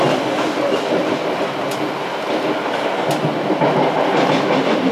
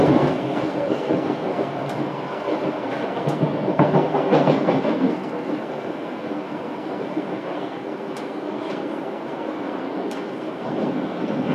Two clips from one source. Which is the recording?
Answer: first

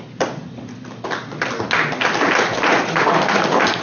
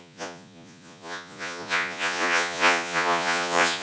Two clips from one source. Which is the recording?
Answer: first